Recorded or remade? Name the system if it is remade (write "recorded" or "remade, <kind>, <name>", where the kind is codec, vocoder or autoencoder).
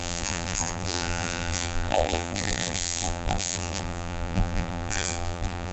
remade, vocoder, BigVGAN v2